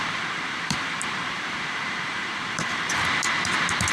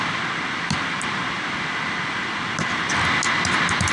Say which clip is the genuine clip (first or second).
second